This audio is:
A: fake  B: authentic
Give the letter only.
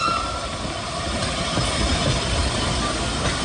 B